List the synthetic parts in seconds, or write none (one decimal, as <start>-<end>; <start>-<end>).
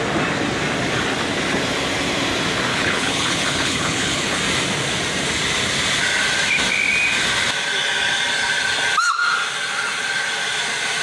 2.7-4.4